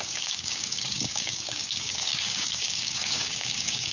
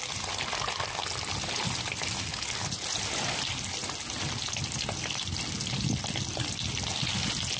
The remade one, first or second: first